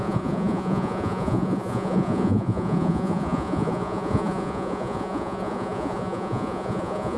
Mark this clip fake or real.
fake